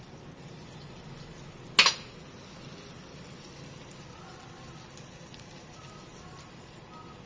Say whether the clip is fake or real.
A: real